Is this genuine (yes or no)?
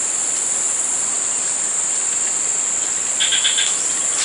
yes